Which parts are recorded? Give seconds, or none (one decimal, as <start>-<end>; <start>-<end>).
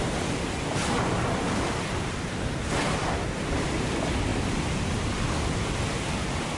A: 0.0-6.6